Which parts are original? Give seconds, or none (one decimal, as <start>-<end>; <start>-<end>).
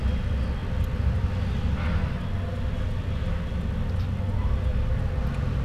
0.0-5.6